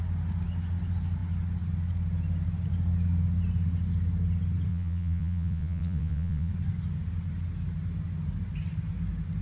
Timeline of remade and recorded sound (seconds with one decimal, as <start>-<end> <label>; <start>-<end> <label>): 0.0-4.7 recorded; 4.7-6.5 remade; 6.5-9.4 recorded